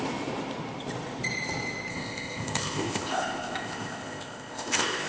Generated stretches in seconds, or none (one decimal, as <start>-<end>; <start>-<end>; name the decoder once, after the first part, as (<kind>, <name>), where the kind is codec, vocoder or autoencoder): 1.9-5.1 (codec, ZipCodec)